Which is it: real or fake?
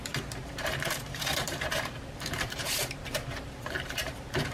fake